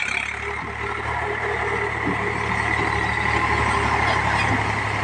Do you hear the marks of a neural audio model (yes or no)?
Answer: no